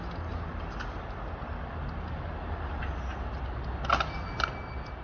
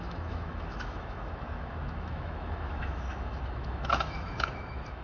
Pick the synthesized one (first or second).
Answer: second